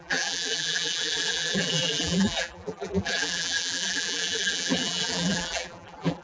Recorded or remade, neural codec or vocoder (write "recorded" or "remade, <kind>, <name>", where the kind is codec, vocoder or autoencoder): remade, vocoder, BigVGAN v2